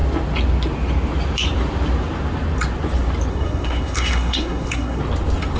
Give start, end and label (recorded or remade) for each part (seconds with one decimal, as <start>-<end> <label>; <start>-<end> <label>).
0.0-3.3 recorded; 3.3-5.0 remade; 5.0-5.6 recorded